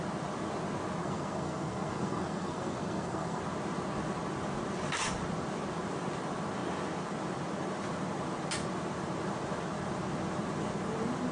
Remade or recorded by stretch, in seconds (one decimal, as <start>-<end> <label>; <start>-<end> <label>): 0.0-1.0 recorded; 1.0-3.4 remade; 3.4-11.3 recorded